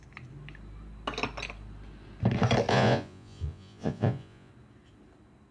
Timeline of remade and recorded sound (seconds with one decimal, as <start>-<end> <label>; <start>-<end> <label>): 0.0-2.7 recorded; 2.7-4.5 remade; 4.5-5.5 recorded